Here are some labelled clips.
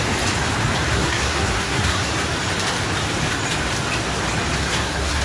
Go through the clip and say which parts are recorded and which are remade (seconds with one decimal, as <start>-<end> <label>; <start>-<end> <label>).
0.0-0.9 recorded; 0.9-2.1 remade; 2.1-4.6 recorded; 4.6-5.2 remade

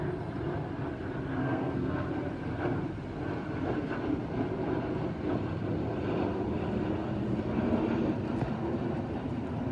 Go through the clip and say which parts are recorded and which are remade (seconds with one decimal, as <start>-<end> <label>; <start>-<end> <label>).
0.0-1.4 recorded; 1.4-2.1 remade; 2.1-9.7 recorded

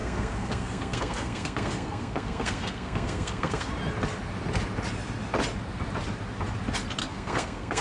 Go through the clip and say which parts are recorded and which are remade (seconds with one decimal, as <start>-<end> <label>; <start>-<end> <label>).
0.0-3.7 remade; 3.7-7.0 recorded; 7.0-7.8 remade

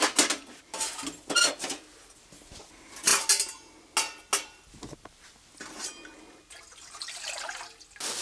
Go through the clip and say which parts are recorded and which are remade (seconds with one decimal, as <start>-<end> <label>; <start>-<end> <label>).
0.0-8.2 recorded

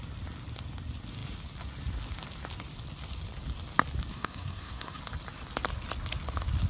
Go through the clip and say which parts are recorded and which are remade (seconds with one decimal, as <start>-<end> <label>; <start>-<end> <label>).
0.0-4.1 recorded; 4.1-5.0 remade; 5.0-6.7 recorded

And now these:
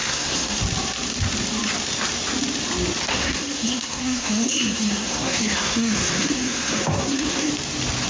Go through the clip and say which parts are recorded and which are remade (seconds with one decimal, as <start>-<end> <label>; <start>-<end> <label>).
0.0-0.6 remade; 0.6-3.1 recorded; 3.1-7.5 remade; 7.5-8.1 recorded